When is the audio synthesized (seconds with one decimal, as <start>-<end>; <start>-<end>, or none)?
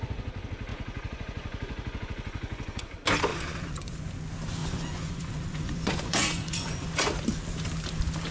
0.7-2.8; 3.3-4.1; 4.6-7.1